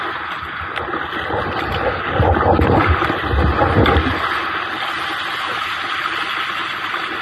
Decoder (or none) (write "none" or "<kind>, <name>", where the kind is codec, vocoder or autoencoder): none